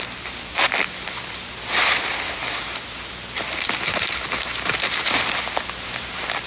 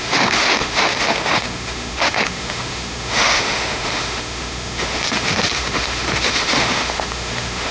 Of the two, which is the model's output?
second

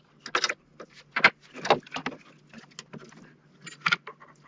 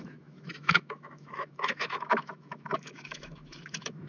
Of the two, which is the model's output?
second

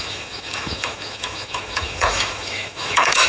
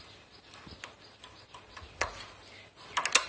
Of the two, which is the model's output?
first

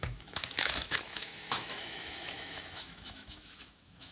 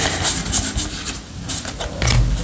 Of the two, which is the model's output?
first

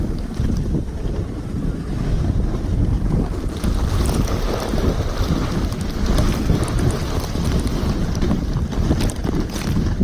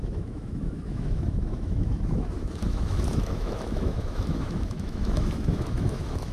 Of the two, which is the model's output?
second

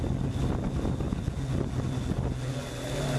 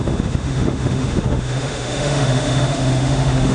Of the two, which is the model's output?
second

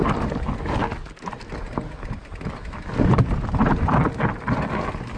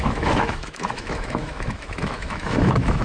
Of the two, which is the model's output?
second